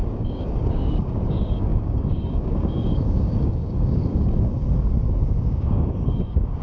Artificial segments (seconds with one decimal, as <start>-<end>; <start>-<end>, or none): 0.0-6.6